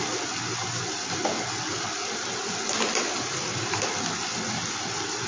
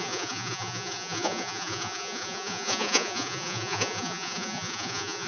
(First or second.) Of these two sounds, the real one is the first